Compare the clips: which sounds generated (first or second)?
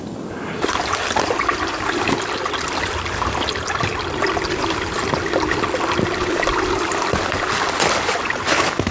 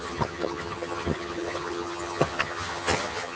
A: second